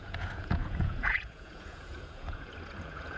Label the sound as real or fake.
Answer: fake